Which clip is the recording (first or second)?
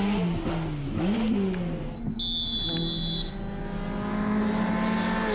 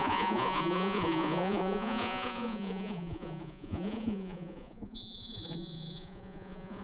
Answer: first